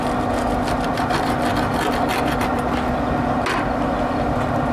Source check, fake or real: real